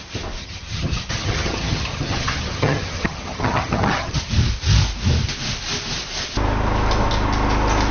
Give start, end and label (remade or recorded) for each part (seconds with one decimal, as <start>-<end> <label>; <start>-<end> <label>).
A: 0.0-0.4 recorded; 0.4-4.3 remade; 4.3-7.9 recorded